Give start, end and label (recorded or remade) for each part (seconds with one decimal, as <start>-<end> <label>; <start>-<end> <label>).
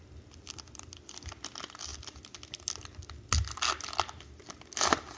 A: 0.0-5.2 recorded